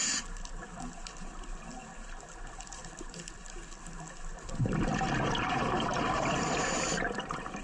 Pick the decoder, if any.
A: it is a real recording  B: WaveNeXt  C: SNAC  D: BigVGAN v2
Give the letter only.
A